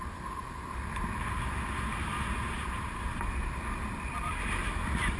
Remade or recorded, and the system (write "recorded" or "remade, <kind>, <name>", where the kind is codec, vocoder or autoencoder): recorded